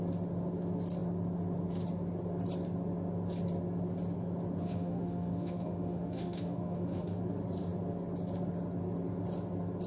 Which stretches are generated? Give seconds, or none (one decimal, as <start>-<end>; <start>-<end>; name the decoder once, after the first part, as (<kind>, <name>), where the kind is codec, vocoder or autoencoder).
4.6-7.2 (autoencoder, DAC-VAE)